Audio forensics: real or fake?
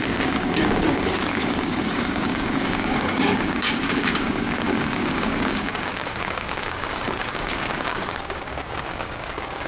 fake